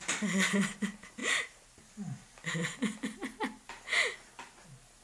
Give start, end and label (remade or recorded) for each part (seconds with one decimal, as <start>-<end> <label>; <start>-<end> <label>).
0.0-5.0 recorded